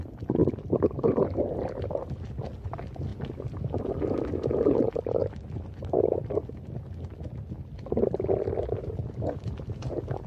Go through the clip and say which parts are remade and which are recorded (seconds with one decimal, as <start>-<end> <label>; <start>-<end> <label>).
0.0-0.4 recorded; 0.4-1.6 remade; 1.6-10.3 recorded